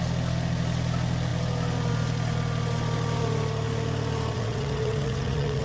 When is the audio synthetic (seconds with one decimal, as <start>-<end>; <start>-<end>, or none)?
4.3-5.6

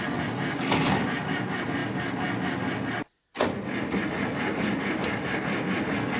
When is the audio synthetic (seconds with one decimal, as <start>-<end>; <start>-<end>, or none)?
none